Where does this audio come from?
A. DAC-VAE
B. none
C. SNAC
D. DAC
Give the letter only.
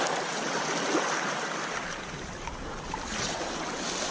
B